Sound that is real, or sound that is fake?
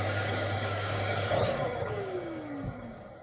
fake